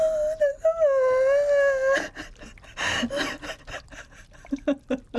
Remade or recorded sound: recorded